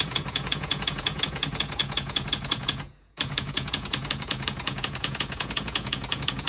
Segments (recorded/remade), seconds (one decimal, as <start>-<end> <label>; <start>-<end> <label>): 0.0-6.5 remade